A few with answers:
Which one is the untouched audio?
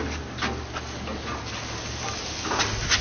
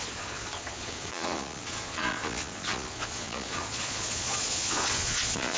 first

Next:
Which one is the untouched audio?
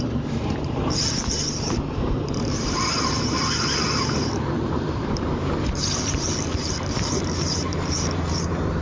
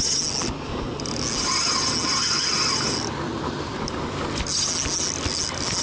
second